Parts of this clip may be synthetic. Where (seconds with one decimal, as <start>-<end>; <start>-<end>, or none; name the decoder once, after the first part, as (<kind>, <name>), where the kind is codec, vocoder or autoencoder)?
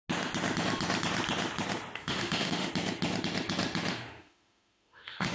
2.0-2.7 (autoencoder, DAC-VAE); 3.9-5.3